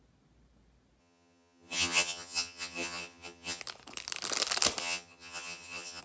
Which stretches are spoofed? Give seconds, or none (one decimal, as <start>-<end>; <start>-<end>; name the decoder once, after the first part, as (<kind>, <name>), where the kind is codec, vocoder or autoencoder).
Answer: 1.0-3.6 (vocoder, HiFi-GAN); 4.8-6.0